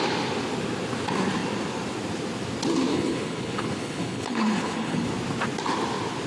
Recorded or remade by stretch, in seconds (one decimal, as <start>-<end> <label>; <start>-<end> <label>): 0.0-2.9 recorded; 2.9-5.1 remade; 5.1-6.3 recorded